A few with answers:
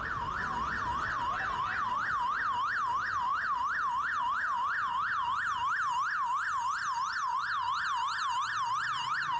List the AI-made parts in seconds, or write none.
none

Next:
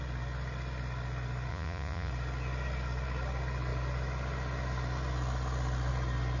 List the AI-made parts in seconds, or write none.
1.5-2.1 (vocoder, Vocos)

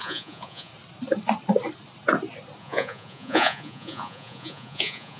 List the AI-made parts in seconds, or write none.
0.0-0.7 (vocoder, Vocos); 2.6-5.2

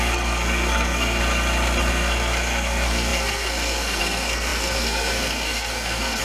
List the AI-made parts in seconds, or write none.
0.0-1.2 (codec, SNAC); 1.9-6.2

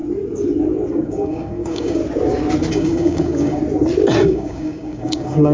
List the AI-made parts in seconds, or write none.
0.9-2.0 (codec, DAC); 2.7-3.6; 4.2-5.5

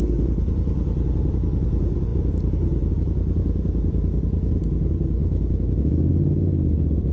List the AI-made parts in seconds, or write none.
5.2-6.1 (autoencoder, DAC-VAE)

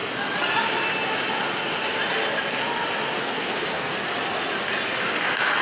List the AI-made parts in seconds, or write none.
3.2-3.9 (codec, SNAC)

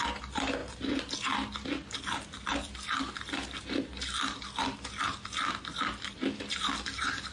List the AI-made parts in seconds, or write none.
none